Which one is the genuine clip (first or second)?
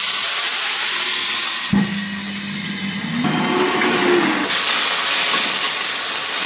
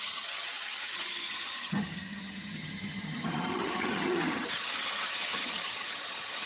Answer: first